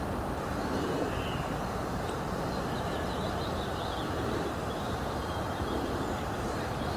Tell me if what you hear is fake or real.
fake